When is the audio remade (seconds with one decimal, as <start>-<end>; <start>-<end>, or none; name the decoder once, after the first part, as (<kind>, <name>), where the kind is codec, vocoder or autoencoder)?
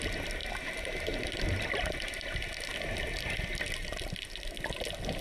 none